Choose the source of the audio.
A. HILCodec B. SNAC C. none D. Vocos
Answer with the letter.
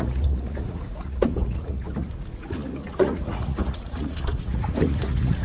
D